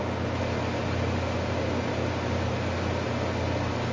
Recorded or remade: recorded